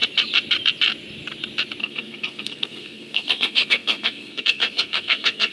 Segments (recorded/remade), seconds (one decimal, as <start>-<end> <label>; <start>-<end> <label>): 0.0-1.8 recorded; 1.8-5.5 remade

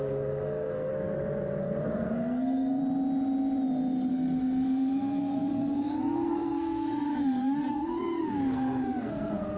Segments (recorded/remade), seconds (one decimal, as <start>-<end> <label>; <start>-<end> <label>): 0.0-0.9 remade; 0.9-1.6 recorded; 1.6-2.8 remade; 2.8-4.1 recorded; 4.1-9.6 remade

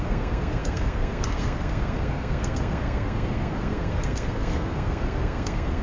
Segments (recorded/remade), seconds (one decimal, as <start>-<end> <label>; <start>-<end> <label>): 0.0-5.8 remade

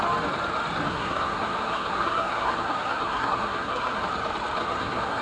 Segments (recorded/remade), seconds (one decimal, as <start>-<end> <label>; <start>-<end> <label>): 0.0-0.9 recorded; 0.9-4.0 remade; 4.0-4.6 recorded; 4.6-5.2 remade